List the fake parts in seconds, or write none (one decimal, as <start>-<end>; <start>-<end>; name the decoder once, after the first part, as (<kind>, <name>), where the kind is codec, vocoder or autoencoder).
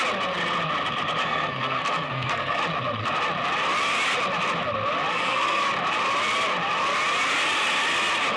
1.2-2.6 (codec, SNAC); 5.1-5.6